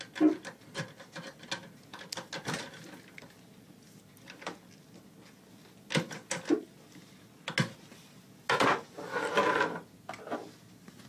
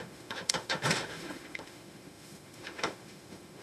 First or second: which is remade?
second